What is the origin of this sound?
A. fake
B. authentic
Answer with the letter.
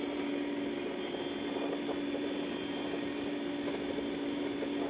B